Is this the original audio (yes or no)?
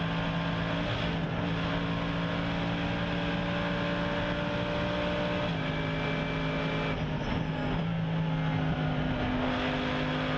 yes